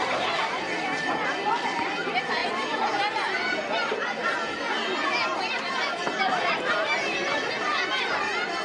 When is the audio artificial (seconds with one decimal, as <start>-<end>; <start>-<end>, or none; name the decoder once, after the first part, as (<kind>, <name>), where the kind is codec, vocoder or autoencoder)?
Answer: none